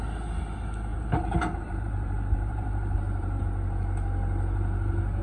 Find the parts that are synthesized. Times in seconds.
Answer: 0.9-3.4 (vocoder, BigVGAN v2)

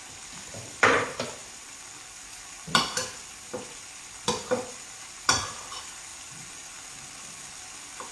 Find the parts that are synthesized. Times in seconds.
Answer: 0.0-6.1 (vocoder, BigVGAN v2)

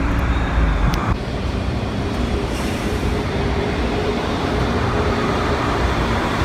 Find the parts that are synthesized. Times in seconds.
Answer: 0.0-6.4 (vocoder, BigVGAN v2)

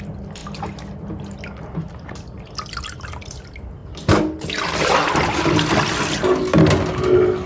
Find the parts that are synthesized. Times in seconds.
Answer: none